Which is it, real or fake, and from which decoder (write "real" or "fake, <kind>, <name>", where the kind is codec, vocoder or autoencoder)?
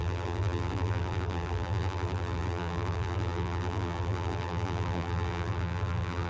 fake, vocoder, BigVGAN v2